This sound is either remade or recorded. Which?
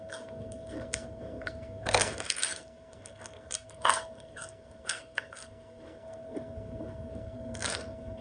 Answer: remade